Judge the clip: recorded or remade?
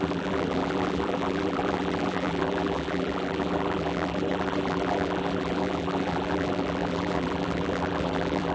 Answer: remade